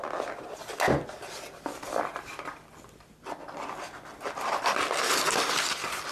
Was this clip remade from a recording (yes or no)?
no